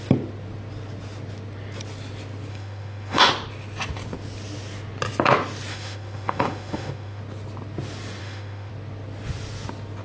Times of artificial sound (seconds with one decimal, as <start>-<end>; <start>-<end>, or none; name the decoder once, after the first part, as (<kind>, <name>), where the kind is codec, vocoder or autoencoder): 2.5-3.3 (autoencoder, DAC-VAE); 5.7-7.2; 8.2-8.7